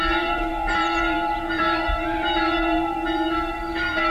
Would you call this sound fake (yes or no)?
yes